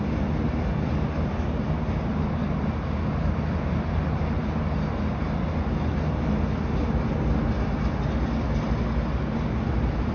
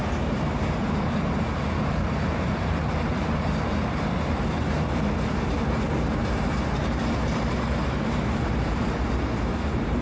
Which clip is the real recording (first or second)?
first